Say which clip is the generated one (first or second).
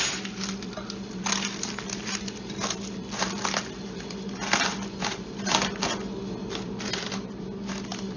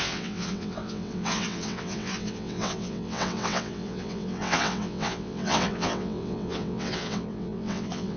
second